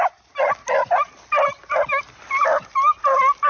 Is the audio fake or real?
real